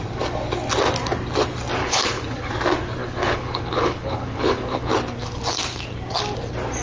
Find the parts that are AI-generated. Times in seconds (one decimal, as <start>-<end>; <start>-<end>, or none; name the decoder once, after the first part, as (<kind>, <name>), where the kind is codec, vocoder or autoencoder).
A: 1.8-2.5 (codec, HILCodec); 3.0-4.9